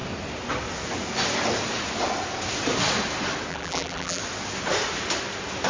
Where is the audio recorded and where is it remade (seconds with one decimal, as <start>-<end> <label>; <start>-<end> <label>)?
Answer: 0.0-3.5 recorded; 3.5-4.2 remade; 4.2-5.7 recorded